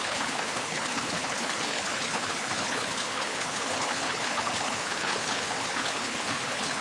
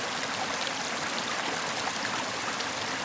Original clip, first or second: second